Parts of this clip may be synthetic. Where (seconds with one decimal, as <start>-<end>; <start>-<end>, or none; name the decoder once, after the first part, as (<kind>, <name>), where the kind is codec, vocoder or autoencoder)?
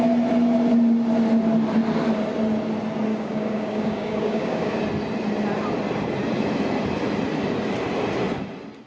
3.1-4.8 (codec, DAC)